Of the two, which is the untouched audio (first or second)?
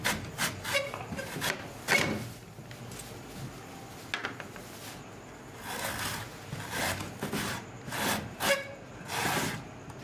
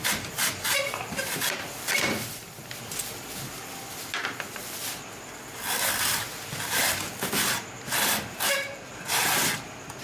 first